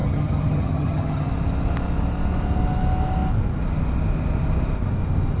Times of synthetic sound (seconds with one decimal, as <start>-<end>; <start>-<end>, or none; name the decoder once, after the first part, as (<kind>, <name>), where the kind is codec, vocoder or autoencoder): 0.0-1.3 (vocoder, HiFi-GAN)